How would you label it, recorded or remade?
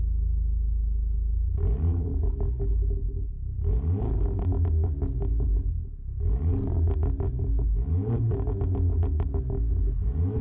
recorded